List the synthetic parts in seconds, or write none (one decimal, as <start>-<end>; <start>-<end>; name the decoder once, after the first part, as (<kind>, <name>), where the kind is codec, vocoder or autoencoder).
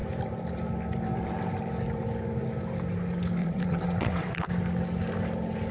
3.4-4.5 (vocoder, WaveNeXt)